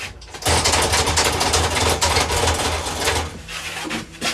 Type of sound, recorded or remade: recorded